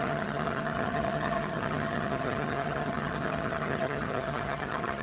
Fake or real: fake